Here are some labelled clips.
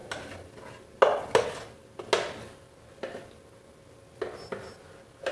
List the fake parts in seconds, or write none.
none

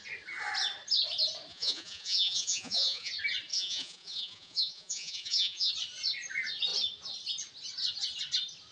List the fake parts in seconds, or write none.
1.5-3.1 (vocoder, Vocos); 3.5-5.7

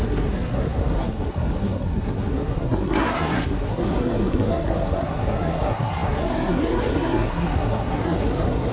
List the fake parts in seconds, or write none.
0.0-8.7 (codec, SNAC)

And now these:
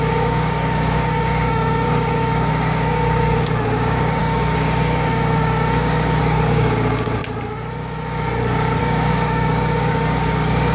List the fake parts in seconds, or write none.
0.0-7.2 (codec, DAC); 8.8-10.7

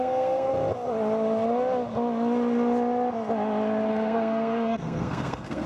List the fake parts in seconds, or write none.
0.0-0.5 (codec, SNAC); 3.9-5.7

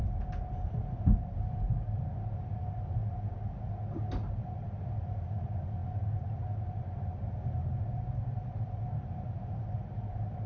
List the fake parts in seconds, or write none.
none

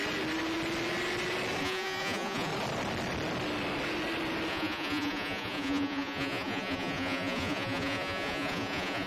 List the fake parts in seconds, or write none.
1.6-2.5 (vocoder, Vocos); 4.5-9.1

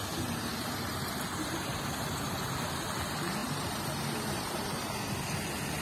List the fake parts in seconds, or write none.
0.5-2.5 (vocoder, BigVGAN v2); 3.4-5.1